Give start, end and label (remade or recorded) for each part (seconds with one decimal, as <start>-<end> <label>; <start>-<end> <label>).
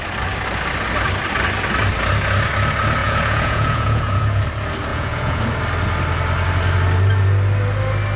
0.0-3.0 recorded; 3.0-4.2 remade; 4.2-4.9 recorded; 4.9-5.4 remade; 5.4-8.2 recorded